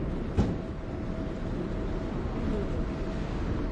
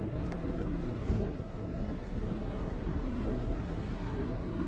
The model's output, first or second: second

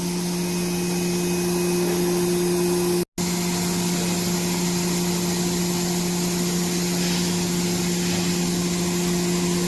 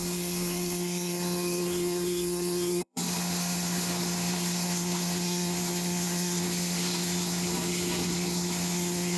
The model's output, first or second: second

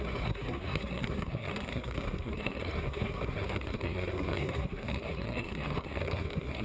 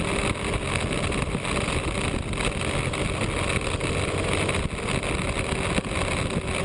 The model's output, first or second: first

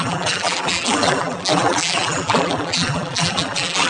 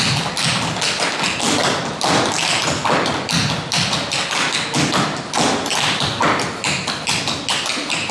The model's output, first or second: first